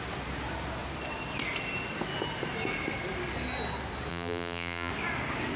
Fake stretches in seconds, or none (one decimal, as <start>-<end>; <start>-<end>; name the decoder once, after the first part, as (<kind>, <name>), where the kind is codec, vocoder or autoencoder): 4.1-4.9 (vocoder, BigVGAN v2)